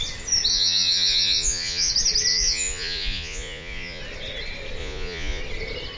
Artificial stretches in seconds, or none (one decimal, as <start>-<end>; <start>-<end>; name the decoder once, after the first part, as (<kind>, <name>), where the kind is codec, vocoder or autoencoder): 0.5-1.9 (vocoder, Vocos); 2.3-4.0; 4.8-5.4